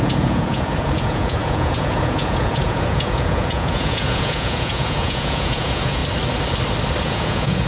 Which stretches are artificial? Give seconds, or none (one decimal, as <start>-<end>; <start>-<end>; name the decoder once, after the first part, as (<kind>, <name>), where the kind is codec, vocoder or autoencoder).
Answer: 0.0-6.0 (vocoder, Vocos); 7.0-7.7

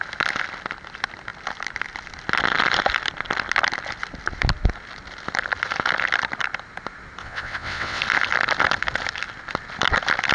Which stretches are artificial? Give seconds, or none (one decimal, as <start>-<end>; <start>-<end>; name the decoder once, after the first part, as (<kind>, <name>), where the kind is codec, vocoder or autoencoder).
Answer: 7.2-8.0 (vocoder, WaveNeXt)